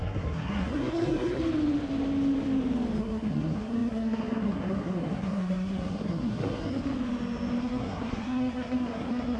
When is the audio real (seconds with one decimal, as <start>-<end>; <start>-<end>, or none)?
1.4-3.0; 6.8-7.6